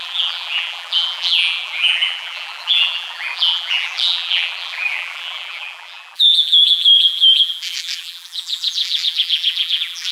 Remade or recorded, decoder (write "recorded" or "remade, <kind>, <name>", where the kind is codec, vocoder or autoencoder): remade, vocoder, BigVGAN v2